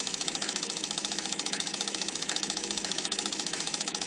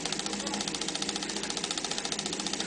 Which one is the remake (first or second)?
first